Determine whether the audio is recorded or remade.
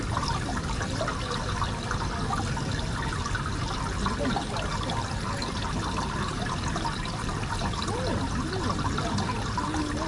recorded